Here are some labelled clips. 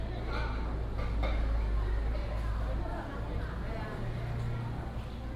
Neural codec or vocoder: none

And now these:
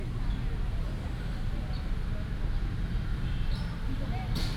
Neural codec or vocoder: none